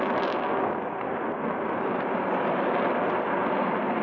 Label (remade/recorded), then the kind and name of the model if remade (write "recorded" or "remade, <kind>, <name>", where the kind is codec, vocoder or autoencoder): recorded